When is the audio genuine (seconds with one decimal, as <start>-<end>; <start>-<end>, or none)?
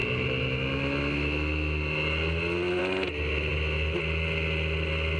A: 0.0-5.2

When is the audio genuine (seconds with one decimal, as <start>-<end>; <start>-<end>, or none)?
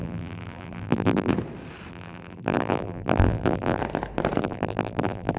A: 1.3-1.9; 3.8-4.4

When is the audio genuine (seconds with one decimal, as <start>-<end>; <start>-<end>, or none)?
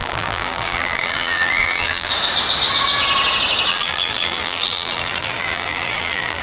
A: 2.1-3.7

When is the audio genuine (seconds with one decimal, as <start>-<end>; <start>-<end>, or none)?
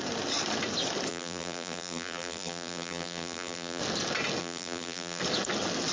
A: 0.0-1.1; 3.8-4.4; 5.2-5.9